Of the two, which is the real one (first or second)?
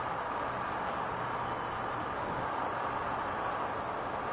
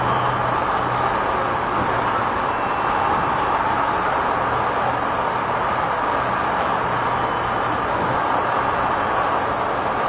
second